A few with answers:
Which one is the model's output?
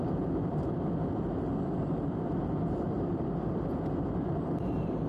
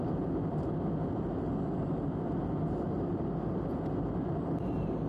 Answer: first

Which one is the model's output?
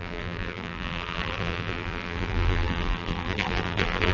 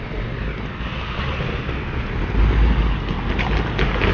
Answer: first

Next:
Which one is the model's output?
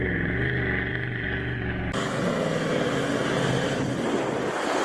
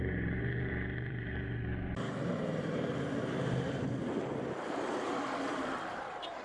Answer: second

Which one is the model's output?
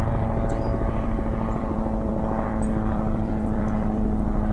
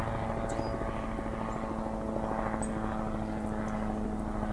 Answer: first